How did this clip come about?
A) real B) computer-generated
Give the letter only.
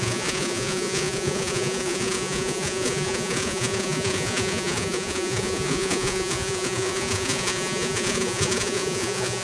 B